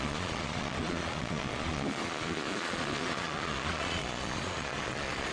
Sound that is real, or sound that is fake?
fake